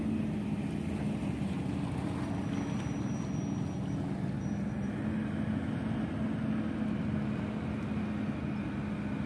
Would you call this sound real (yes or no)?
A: yes